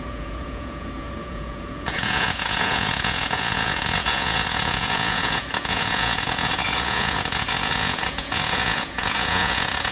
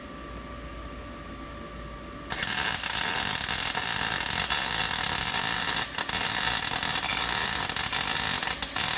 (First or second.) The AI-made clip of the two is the first